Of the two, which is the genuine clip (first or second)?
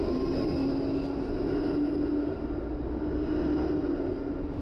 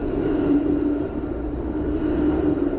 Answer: first